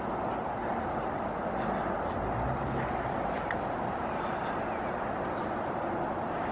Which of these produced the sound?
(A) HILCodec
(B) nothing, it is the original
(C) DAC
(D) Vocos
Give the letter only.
B